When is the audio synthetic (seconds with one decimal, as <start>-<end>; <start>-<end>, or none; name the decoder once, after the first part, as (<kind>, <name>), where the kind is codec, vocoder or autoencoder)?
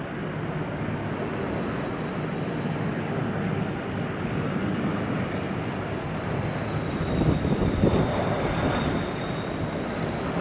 none